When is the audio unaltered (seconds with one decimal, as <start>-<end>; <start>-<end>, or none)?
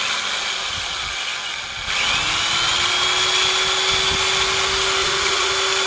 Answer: 0.0-5.0; 5.5-5.9